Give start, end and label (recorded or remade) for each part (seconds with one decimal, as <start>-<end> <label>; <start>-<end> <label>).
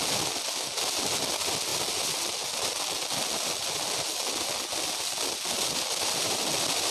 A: 0.0-6.9 recorded